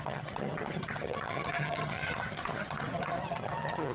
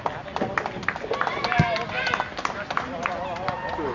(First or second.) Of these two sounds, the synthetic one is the first